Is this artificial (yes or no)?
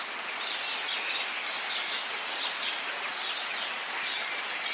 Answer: no